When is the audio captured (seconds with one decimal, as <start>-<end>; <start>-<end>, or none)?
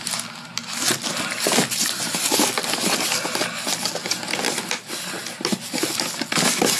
0.0-6.8